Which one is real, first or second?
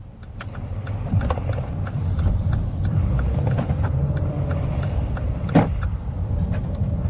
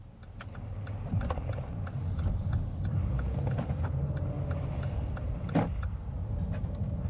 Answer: second